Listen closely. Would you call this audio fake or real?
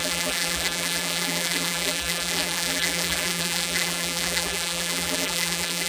fake